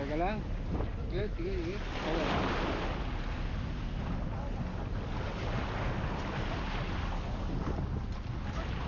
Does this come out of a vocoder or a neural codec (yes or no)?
no